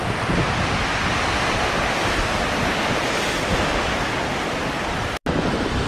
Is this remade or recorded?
recorded